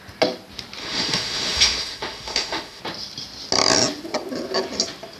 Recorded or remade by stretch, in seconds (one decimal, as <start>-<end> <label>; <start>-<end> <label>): 0.0-0.8 recorded; 0.8-2.8 remade; 2.8-5.2 recorded